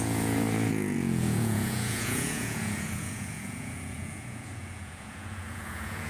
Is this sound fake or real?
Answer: fake